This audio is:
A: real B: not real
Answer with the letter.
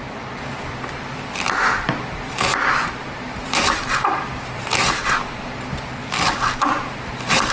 B